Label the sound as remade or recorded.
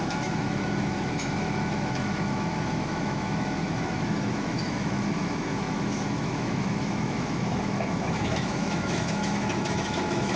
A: remade